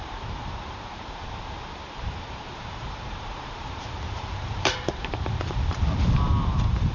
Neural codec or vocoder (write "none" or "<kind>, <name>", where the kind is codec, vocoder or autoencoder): vocoder, BigVGAN v2